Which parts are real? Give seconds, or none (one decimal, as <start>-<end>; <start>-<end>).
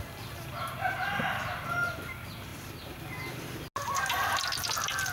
0.0-5.1